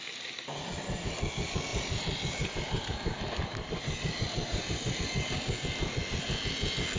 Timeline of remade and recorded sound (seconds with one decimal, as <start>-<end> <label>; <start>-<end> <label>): 0.0-1.7 recorded; 1.7-5.0 remade; 5.0-7.0 recorded